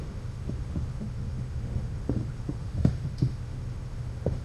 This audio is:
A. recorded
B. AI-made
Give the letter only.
B